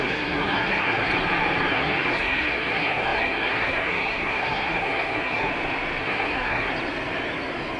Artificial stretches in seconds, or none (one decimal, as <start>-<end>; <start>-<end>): 0.0-1.1; 1.7-5.5; 6.0-6.7